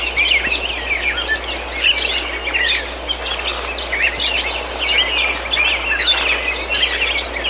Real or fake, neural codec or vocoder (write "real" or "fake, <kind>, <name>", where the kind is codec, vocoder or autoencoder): real